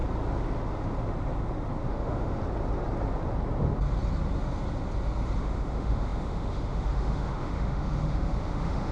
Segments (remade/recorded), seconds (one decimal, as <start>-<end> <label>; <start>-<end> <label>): 0.0-1.9 recorded; 1.9-2.4 remade; 2.4-5.4 recorded; 5.4-8.9 remade